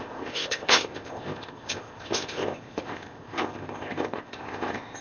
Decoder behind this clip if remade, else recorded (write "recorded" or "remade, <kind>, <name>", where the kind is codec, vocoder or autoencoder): remade, codec, ZipCodec